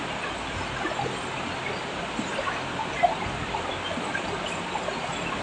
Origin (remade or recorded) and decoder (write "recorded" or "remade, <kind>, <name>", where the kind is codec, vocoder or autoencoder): recorded